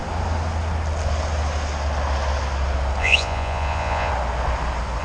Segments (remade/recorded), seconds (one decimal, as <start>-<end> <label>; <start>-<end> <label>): 0.0-3.0 recorded; 3.0-4.1 remade; 4.1-5.0 recorded